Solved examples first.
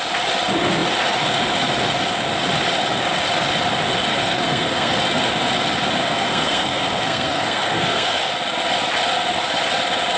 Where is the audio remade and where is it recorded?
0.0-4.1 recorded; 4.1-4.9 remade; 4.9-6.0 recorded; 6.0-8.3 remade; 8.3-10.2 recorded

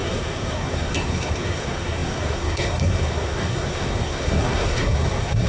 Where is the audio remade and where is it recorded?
0.0-5.5 remade

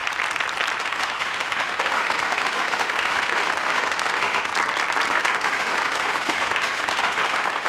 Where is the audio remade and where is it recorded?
0.0-0.8 recorded; 0.8-4.5 remade; 4.5-5.1 recorded; 5.1-7.7 remade

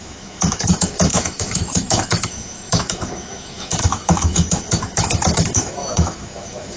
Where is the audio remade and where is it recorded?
0.0-6.8 remade

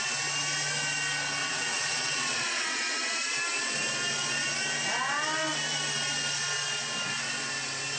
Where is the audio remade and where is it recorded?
0.0-1.4 recorded; 1.4-2.8 remade; 2.8-8.0 recorded

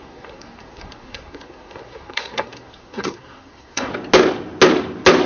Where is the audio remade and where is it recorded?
0.0-3.9 remade; 3.9-5.3 recorded

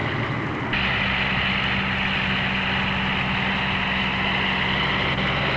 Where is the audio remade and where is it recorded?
0.0-5.6 recorded